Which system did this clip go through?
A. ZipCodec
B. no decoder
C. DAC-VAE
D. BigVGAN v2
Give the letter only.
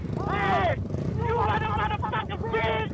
D